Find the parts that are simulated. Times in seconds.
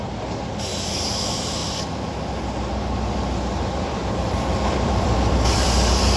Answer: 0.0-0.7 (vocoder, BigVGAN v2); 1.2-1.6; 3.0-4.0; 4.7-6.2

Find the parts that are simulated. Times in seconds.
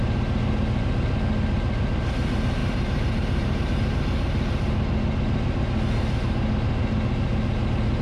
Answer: 2.6-3.8 (vocoder, BigVGAN v2)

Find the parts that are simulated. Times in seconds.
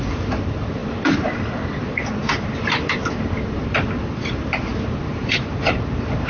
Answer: 0.0-6.3 (vocoder, BigVGAN v2)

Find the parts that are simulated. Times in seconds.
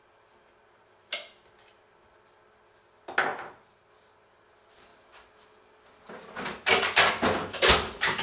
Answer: 3.3-3.9 (vocoder, BigVGAN v2)